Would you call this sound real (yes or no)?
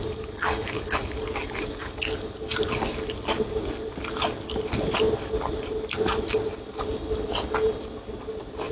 yes